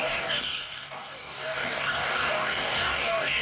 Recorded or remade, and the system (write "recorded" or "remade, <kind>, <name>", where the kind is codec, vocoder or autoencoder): remade, codec, DAC